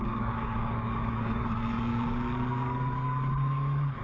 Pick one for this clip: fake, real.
fake